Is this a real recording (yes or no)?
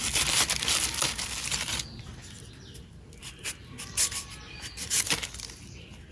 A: yes